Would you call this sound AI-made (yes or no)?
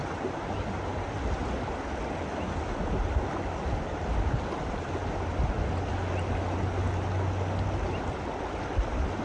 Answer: no